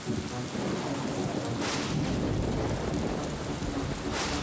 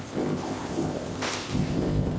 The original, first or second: first